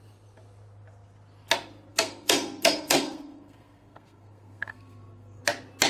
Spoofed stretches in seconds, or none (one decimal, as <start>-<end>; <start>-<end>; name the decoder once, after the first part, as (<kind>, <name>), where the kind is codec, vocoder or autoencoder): 1.9-5.4 (codec, SNAC)